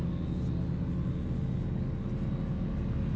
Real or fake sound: real